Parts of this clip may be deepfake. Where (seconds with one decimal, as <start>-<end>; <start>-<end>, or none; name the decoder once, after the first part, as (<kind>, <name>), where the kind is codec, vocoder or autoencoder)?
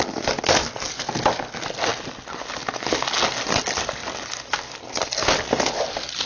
none